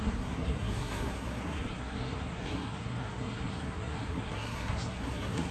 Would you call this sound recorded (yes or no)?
no